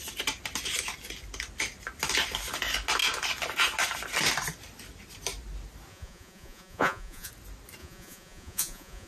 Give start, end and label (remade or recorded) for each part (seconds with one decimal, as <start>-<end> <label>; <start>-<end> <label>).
0.0-5.9 recorded; 5.9-7.3 remade; 7.3-7.8 recorded; 7.8-9.1 remade